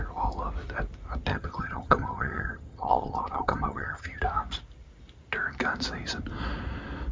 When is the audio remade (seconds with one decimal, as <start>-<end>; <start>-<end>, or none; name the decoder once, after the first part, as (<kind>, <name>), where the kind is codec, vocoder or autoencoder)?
1.3-4.2 (vocoder, HiFi-GAN)